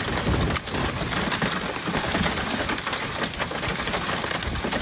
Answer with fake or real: real